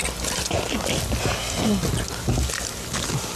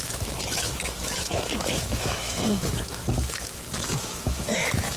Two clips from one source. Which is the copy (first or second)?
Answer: second